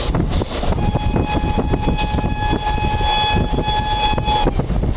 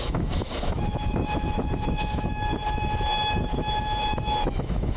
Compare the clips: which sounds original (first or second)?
first